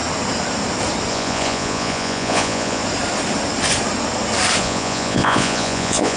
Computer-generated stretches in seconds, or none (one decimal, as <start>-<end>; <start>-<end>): 1.1-2.8; 4.6-6.2